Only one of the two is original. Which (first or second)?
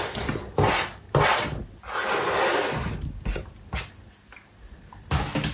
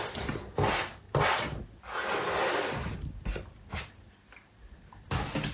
first